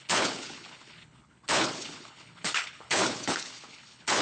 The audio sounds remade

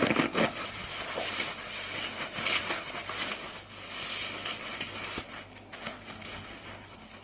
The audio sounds recorded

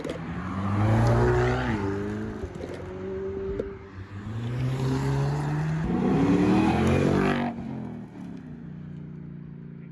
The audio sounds recorded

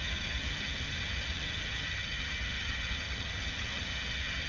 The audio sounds remade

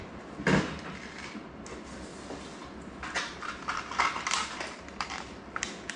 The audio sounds recorded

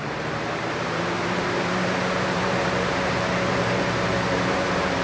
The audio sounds remade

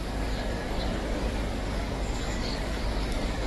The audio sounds remade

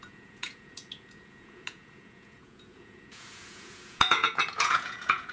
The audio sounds remade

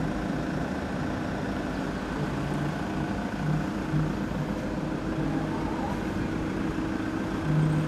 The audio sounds recorded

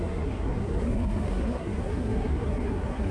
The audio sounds remade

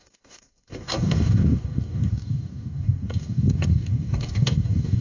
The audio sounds remade